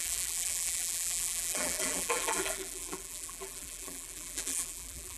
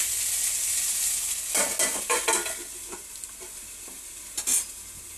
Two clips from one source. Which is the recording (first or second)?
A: second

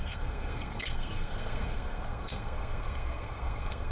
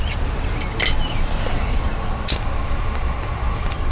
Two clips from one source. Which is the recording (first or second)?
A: second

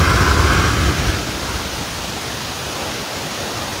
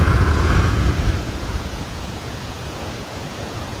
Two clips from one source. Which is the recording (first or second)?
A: first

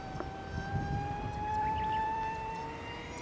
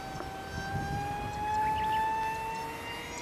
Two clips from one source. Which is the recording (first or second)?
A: second